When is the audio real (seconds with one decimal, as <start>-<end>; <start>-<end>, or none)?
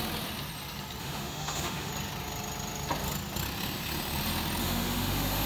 0.0-1.0; 1.9-4.6